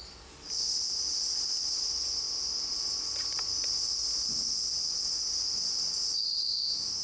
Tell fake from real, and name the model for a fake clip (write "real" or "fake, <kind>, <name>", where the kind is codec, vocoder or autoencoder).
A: real